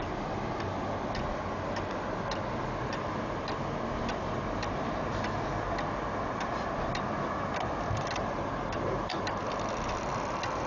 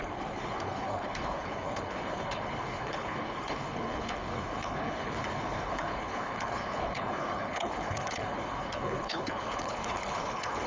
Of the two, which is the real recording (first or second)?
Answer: first